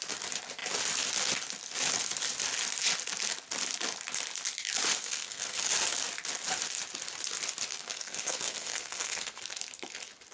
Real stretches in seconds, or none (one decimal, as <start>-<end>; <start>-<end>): 0.0-4.9; 5.7-7.7; 9.4-10.3